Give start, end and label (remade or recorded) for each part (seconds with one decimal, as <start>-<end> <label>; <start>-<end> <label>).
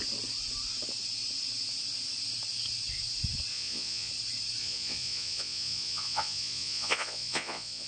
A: 0.0-3.5 recorded; 3.5-4.1 remade; 4.1-4.6 recorded; 4.6-7.9 remade